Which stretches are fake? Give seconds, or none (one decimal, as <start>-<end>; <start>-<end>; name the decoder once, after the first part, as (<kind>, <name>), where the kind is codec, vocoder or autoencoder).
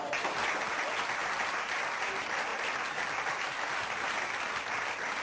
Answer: none